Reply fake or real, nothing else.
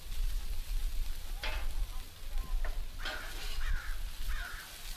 fake